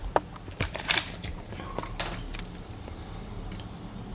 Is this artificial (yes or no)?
no